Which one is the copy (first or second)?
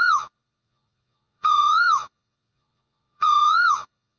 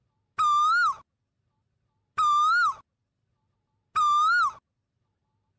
first